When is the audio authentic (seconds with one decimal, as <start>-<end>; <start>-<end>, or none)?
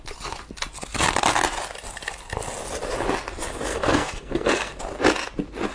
0.0-3.7; 4.8-5.7